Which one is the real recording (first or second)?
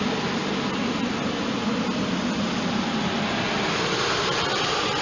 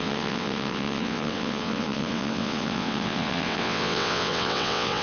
first